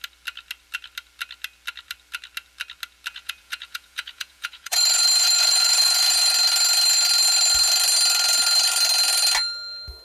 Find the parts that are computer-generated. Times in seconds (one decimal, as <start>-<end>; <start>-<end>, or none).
3.1-6.3